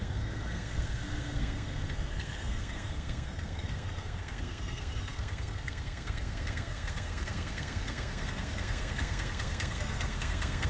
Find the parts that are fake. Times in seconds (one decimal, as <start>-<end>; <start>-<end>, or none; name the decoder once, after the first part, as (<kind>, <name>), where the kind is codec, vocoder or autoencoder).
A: 0.0-10.7 (codec, SNAC)